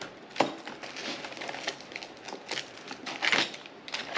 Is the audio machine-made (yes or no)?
no